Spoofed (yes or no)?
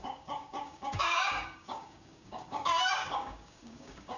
yes